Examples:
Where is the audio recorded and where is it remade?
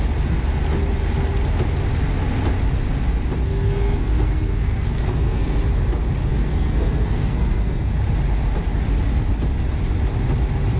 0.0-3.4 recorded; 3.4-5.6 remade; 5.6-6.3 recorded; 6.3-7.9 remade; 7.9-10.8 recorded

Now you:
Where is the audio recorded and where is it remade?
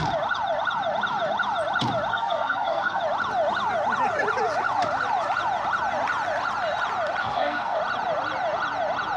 0.0-2.1 recorded; 2.1-3.0 remade; 3.0-7.2 recorded; 7.2-7.8 remade; 7.8-9.2 recorded